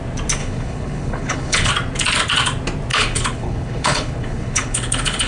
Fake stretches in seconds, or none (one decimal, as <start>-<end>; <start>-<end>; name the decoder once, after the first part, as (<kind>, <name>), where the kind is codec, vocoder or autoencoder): 0.4-1.7 (codec, HILCodec); 2.9-5.3